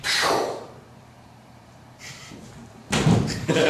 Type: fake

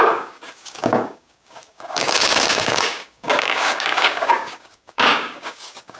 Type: fake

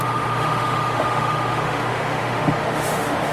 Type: fake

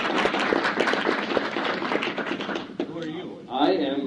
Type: real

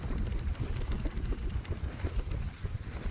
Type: real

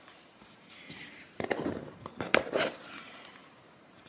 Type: fake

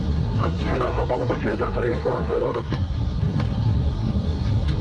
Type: fake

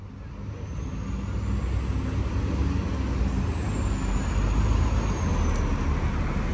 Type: real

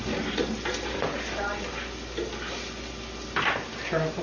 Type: real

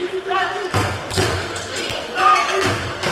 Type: fake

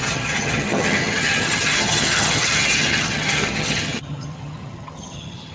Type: fake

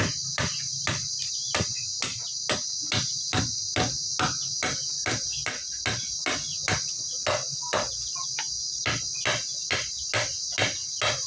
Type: real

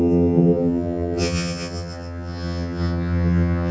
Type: fake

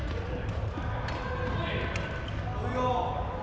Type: real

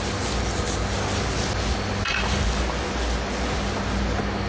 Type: real